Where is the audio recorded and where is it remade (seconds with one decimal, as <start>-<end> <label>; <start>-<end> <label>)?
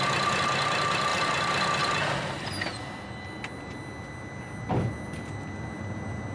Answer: 0.0-6.3 recorded